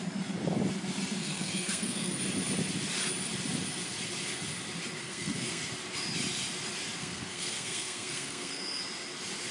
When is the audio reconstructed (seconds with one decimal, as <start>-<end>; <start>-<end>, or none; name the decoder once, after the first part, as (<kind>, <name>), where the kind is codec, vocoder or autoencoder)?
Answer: 1.2-2.1 (codec, SNAC); 5.0-5.6; 7.0-8.8